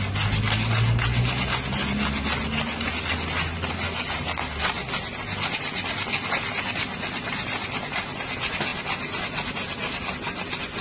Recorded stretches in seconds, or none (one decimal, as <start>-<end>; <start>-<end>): 0.0-10.8